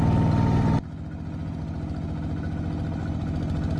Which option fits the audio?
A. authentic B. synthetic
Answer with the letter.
A